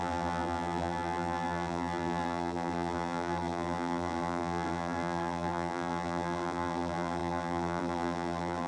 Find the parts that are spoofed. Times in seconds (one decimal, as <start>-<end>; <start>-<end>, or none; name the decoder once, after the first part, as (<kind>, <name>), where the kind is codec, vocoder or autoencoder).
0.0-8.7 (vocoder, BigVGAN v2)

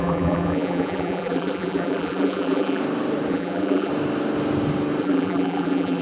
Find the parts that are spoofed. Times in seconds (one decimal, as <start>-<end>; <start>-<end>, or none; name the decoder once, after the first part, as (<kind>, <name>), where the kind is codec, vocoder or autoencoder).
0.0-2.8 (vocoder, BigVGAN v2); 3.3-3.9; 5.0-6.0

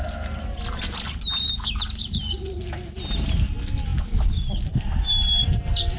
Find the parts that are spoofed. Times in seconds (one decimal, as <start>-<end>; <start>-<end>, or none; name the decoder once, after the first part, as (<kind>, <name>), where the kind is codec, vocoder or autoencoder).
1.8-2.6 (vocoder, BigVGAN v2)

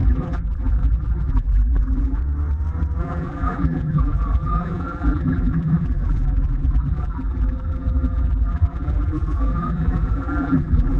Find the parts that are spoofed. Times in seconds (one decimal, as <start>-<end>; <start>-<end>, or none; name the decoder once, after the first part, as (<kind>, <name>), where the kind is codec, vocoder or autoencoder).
0.0-2.2 (vocoder, BigVGAN v2); 3.0-11.0

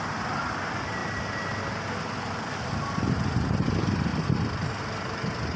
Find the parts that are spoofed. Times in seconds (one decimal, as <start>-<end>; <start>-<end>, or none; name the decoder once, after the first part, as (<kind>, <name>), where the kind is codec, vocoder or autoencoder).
none

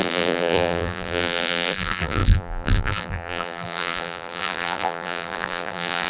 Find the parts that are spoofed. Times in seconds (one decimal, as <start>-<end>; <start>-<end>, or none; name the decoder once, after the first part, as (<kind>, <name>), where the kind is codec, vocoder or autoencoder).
0.0-6.1 (vocoder, BigVGAN v2)

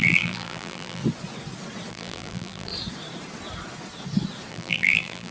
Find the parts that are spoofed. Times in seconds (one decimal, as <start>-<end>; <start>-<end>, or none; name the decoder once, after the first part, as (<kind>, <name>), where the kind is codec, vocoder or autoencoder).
0.0-1.0 (vocoder, BigVGAN v2); 1.9-2.7; 4.5-5.3

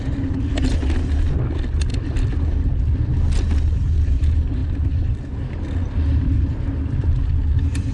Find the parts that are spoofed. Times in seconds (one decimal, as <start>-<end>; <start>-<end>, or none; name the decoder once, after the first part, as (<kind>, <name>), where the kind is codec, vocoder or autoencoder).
1.9-3.1 (vocoder, BigVGAN v2); 4.6-5.2; 6.1-7.1